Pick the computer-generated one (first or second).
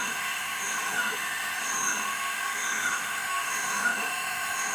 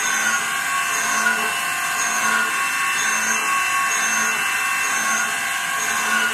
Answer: first